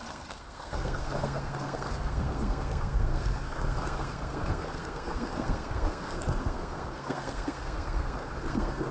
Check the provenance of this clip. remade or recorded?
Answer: remade